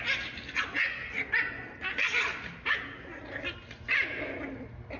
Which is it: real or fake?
real